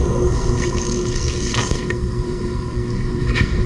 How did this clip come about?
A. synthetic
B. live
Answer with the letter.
A